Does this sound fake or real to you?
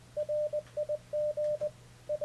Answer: real